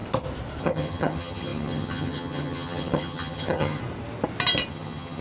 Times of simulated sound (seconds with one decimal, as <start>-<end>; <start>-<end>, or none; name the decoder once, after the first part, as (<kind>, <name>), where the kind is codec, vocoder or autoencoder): 0.6-3.8 (vocoder, HiFi-GAN); 4.7-5.2